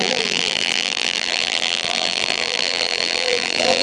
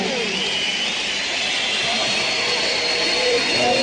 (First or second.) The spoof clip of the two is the first